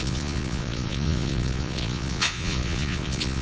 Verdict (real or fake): fake